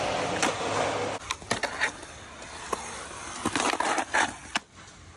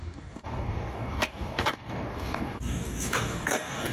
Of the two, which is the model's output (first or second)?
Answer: second